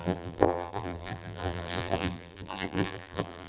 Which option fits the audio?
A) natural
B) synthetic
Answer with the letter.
B